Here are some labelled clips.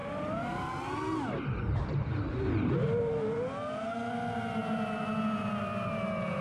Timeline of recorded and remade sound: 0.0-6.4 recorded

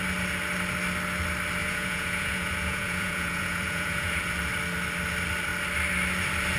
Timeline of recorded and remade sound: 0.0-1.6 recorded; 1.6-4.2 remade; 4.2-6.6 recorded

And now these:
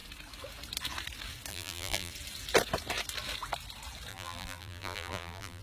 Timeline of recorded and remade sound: 0.0-1.5 recorded; 1.5-2.1 remade; 2.1-4.1 recorded; 4.1-5.6 remade

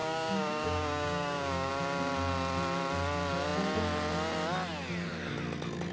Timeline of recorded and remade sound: 0.0-1.7 remade; 1.7-5.9 recorded

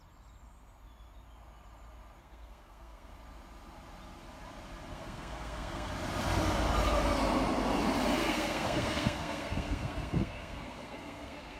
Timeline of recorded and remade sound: 0.0-2.2 recorded; 2.2-3.1 remade; 3.1-4.9 recorded; 4.9-5.9 remade; 5.9-8.2 recorded; 8.2-11.6 remade

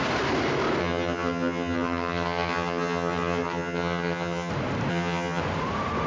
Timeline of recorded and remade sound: 0.0-0.8 recorded; 0.8-4.5 remade; 4.5-4.9 recorded; 4.9-5.4 remade; 5.4-6.1 recorded

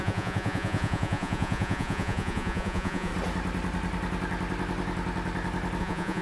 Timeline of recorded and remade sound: 0.0-3.1 remade; 3.1-5.8 recorded; 5.8-6.2 remade